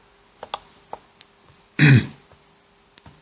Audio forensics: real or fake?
real